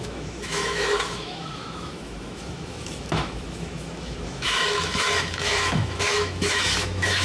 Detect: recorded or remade remade